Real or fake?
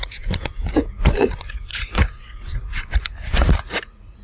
fake